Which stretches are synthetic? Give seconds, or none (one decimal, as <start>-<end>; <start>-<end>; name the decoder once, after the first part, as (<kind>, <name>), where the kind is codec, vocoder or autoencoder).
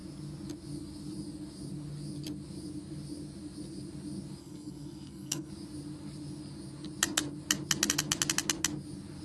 4.4-5.5 (codec, SNAC)